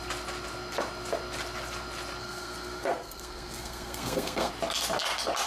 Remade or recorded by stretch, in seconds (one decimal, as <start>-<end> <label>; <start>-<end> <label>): 0.0-2.2 recorded; 2.2-4.5 remade; 4.5-5.5 recorded